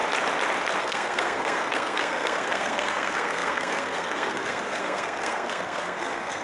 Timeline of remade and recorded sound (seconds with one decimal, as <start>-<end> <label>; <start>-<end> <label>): 0.0-0.8 recorded; 0.8-6.4 remade